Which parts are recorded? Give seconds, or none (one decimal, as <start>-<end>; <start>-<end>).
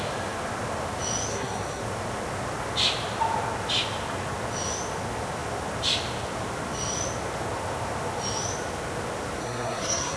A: 0.0-1.3; 1.8-9.4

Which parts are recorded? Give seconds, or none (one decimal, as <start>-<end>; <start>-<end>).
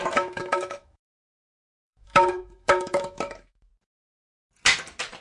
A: 3.7-5.2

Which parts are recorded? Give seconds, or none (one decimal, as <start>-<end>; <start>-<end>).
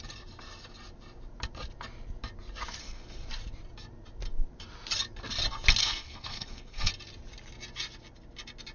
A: 0.0-2.8; 3.3-5.8; 6.9-8.7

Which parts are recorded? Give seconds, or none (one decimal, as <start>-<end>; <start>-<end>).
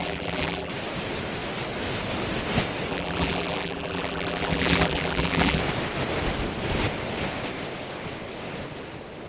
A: 0.7-2.9; 5.6-9.3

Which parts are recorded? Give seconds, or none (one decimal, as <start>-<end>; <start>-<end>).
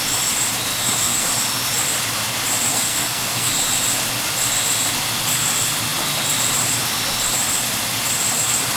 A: 0.0-0.7; 1.3-2.7; 3.5-8.8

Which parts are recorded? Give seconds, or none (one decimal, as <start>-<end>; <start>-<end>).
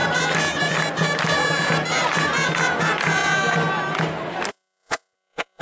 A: 0.0-4.5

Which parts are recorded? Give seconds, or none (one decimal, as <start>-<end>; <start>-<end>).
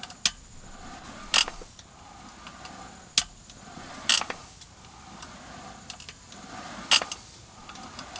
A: 0.0-8.2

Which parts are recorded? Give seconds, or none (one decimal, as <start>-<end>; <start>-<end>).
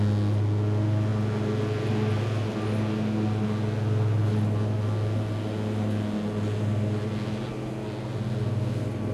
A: 0.0-9.1